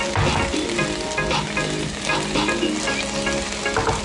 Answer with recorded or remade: recorded